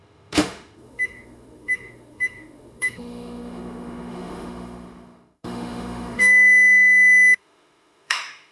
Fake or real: fake